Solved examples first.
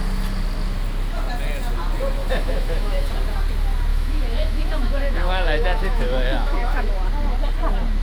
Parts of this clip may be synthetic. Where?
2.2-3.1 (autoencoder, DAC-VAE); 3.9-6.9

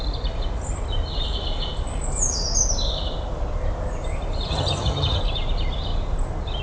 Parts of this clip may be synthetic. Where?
4.5-5.2 (vocoder, HiFi-GAN)